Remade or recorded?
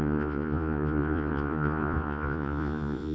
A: remade